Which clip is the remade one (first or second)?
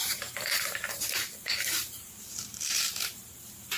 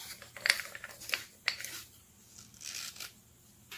first